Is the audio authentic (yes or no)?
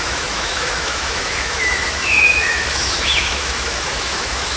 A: no